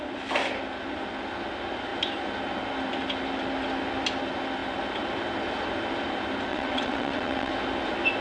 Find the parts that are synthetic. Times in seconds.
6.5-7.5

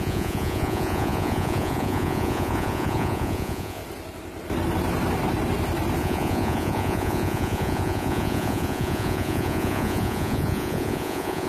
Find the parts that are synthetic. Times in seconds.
0.0-3.8; 6.0-11.5

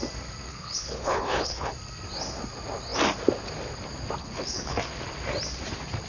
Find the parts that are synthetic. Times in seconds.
0.5-1.7; 4.2-4.8

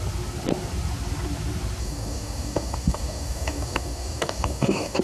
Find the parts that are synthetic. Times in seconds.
1.8-5.0

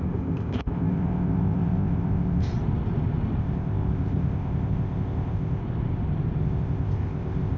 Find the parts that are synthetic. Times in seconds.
0.0-2.5; 3.4-5.6; 6.4-7.6

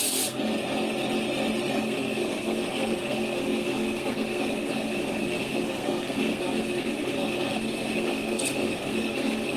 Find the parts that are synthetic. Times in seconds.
0.0-0.5; 1.7-9.6

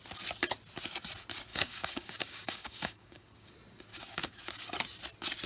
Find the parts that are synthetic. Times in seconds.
1.5-3.5; 3.9-4.4

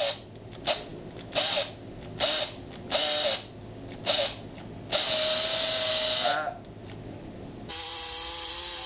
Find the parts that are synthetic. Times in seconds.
none